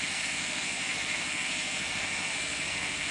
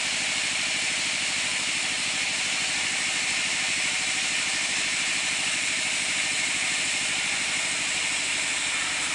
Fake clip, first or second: first